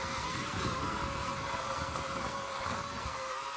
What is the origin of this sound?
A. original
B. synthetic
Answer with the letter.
B